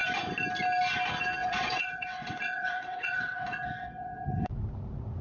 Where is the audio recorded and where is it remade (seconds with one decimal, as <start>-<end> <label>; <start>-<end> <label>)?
0.0-1.4 recorded; 1.4-4.5 remade; 4.5-5.2 recorded